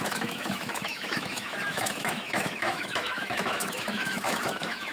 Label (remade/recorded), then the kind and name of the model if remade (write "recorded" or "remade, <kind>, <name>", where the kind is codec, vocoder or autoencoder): remade, autoencoder, DAC-VAE